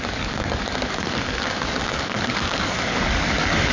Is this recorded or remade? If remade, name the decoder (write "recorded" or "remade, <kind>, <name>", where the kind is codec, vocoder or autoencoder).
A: remade, codec, DAC